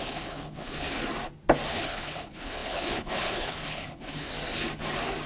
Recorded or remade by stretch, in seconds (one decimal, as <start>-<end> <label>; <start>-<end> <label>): 0.0-1.0 remade; 1.0-1.7 recorded; 1.7-4.3 remade; 4.3-5.3 recorded